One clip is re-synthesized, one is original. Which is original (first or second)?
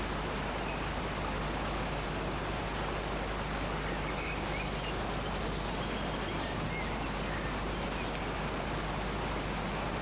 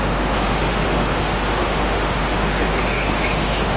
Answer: first